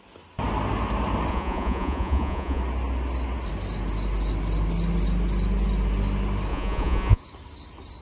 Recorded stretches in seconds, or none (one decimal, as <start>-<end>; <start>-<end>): 0.0-1.3; 2.6-6.5; 7.2-8.0